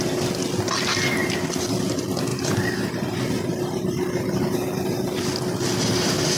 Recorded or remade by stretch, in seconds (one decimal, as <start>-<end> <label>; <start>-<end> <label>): 0.0-2.3 recorded; 2.3-5.2 remade; 5.2-6.4 recorded